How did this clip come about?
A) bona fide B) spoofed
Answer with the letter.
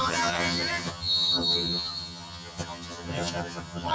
B